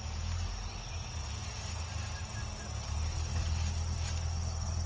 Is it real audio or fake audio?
real